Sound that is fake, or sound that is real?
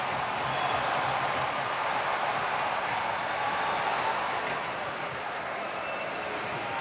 real